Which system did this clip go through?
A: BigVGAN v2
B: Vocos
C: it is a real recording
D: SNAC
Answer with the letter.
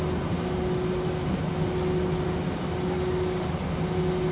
C